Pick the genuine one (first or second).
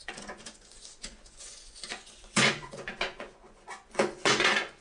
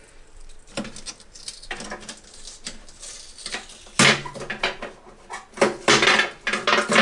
second